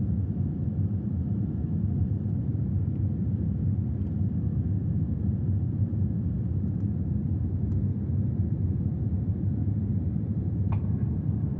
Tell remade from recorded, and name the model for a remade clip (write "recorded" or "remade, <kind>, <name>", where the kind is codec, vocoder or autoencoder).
recorded